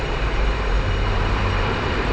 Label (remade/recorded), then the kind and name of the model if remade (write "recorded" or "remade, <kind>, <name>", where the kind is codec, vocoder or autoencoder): remade, vocoder, BigVGAN v2